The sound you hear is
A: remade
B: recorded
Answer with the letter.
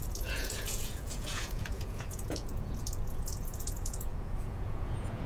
A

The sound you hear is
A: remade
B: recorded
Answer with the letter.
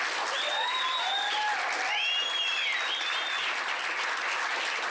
B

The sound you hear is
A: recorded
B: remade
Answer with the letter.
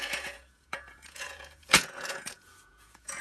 B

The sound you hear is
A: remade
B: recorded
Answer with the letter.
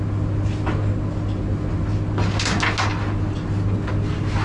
B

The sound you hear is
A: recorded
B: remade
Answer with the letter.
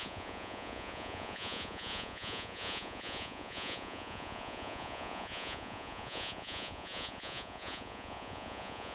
B